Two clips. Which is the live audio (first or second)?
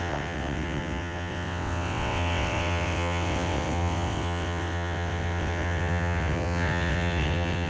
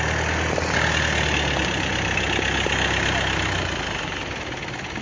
second